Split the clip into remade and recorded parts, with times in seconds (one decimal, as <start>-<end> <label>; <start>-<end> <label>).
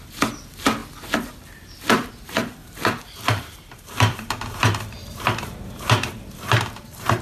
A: 0.0-2.6 recorded; 2.6-7.2 remade